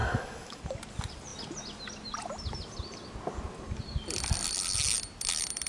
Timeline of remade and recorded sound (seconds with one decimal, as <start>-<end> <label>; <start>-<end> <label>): 0.0-0.6 remade; 0.6-5.7 recorded